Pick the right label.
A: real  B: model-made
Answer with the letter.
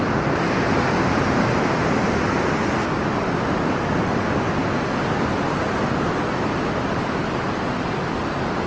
A